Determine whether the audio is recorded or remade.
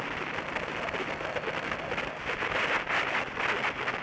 recorded